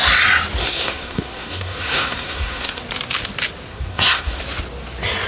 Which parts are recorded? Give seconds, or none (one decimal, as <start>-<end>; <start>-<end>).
0.0-0.6; 2.8-3.7; 4.4-5.3